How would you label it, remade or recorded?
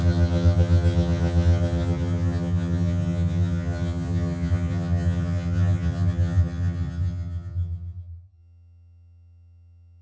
remade